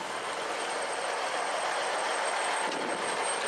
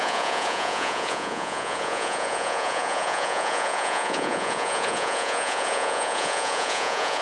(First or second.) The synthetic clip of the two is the second